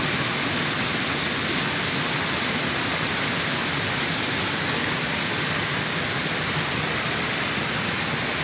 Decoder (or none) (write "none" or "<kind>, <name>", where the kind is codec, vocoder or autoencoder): none